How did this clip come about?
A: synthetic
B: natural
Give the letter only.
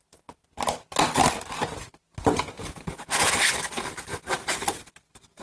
B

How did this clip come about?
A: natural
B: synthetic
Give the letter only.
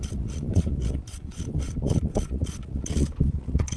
B